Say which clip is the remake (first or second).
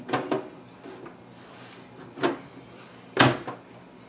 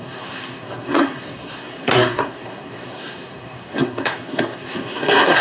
second